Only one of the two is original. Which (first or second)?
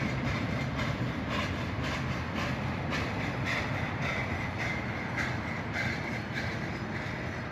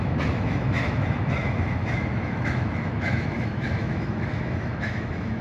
first